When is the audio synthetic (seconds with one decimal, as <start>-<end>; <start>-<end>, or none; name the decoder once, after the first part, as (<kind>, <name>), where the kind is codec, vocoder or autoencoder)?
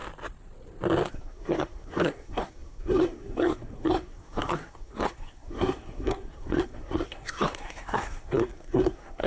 1.1-9.3 (codec, SNAC)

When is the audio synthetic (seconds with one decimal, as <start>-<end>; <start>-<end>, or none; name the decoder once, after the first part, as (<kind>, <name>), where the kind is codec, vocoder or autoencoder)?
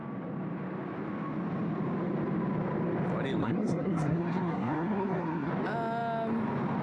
3.4-5.5 (codec, SNAC)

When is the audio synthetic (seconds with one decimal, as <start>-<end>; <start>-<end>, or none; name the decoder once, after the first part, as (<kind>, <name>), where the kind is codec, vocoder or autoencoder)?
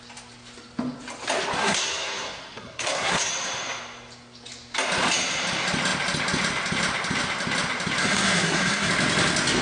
1.6-3.3 (codec, SNAC); 8.0-8.9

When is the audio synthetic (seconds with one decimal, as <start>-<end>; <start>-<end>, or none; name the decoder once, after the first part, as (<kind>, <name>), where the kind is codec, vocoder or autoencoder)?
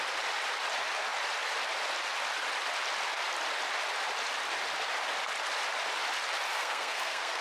6.5-7.4 (codec, SNAC)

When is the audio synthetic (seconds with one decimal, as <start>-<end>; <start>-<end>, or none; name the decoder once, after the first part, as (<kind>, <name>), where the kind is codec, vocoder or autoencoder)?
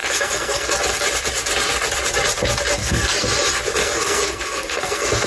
0.0-0.7 (codec, SNAC); 2.8-3.3; 3.8-5.3